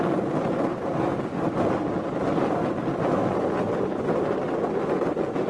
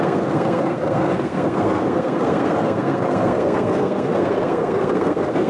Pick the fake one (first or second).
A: second